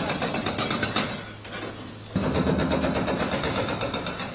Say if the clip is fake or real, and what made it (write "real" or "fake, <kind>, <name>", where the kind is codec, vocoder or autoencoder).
real